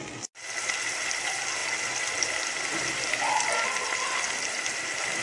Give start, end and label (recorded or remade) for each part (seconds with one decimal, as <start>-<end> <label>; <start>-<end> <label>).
0.0-5.2 recorded